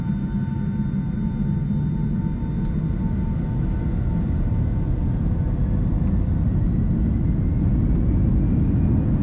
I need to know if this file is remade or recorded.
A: recorded